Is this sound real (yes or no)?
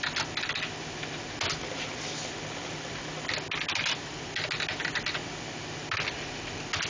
yes